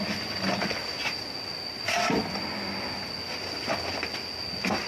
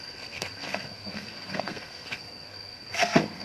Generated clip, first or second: second